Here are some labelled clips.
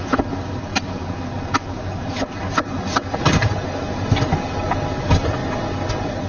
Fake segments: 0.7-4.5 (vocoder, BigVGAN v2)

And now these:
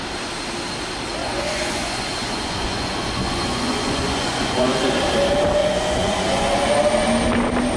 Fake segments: 1.2-4.9 (vocoder, Vocos); 5.6-6.7

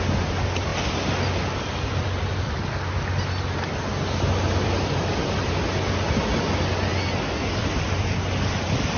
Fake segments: none

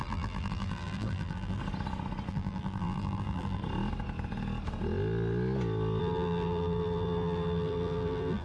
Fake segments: 0.0-1.6 (vocoder, BigVGAN v2); 2.3-3.6; 6.0-8.4

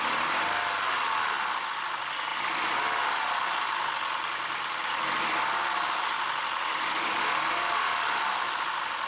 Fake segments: none

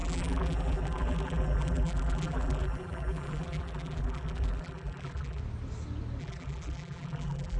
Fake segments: 0.0-5.4 (vocoder, BigVGAN v2); 6.2-7.6